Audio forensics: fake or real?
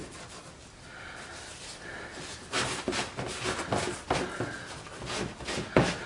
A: real